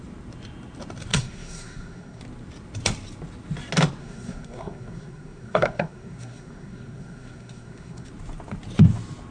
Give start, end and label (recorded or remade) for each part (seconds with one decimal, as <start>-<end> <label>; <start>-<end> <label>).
0.0-1.1 recorded; 1.1-2.2 remade; 2.2-4.0 recorded; 4.0-8.1 remade; 8.1-9.3 recorded